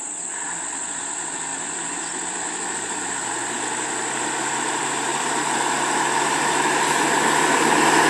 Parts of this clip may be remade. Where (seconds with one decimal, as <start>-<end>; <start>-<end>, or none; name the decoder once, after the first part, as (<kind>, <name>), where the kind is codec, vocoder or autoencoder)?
1.5-2.4 (vocoder, BigVGAN v2)